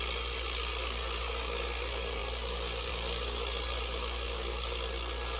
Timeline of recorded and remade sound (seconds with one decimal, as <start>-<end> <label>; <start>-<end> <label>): 0.0-5.4 recorded

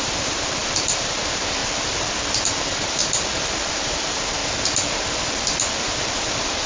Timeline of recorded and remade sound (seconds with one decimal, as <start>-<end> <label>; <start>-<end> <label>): 0.0-1.6 remade; 1.6-2.5 recorded; 2.5-3.0 remade; 3.0-3.7 recorded; 3.7-4.4 remade; 4.4-5.8 recorded; 5.8-6.7 remade